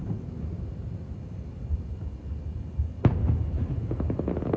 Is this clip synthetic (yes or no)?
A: no